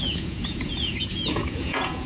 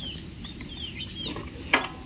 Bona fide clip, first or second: second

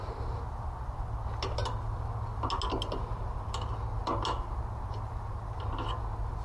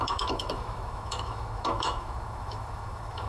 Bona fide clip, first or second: first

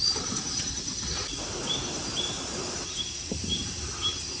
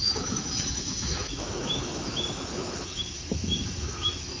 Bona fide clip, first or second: first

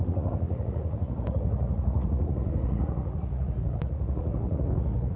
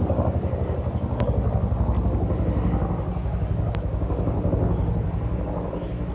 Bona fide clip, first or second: second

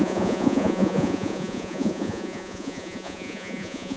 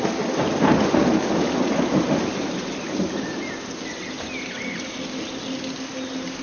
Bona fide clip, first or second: second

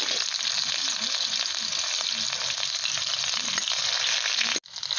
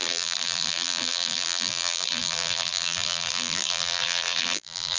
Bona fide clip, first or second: first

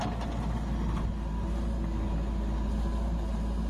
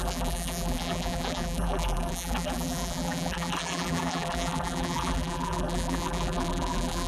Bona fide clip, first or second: first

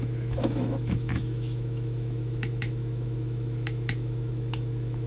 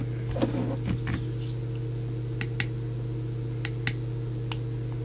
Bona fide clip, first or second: second